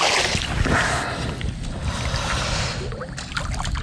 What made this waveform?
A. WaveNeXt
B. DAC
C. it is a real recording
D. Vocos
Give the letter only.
C